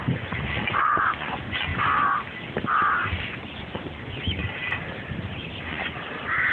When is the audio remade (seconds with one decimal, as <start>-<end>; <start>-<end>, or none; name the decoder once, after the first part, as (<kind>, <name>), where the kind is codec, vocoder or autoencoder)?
0.0-1.7 (vocoder, Vocos); 3.4-4.4; 5.6-6.5

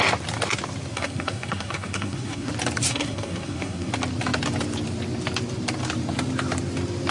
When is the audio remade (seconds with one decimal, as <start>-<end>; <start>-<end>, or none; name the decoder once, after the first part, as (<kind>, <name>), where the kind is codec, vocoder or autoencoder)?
0.9-2.5 (codec, SNAC); 2.9-3.9

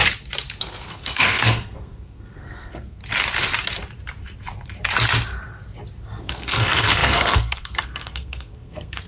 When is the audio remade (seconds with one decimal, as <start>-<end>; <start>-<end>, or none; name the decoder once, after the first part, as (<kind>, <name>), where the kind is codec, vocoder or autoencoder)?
0.6-3.0 (codec, SNAC); 6.2-9.1

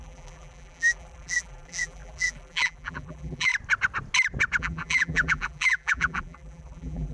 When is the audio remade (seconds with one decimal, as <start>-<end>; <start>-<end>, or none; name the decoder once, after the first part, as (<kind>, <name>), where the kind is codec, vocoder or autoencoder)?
0.0-3.5 (vocoder, BigVGAN v2); 4.6-7.1

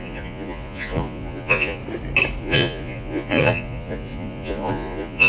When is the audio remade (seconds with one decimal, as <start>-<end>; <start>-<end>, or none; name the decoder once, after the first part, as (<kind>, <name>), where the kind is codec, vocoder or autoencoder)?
0.0-1.8 (vocoder, Vocos); 2.4-5.3